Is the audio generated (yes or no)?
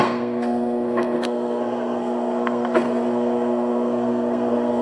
yes